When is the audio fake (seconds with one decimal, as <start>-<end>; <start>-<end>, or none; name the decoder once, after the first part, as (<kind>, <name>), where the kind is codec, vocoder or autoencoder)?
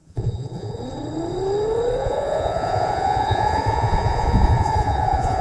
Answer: 0.0-0.8 (vocoder, Vocos); 2.0-5.4